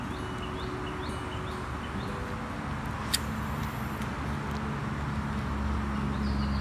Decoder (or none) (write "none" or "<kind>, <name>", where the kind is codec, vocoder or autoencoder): none